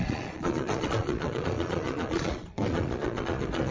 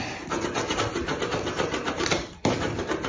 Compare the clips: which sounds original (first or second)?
second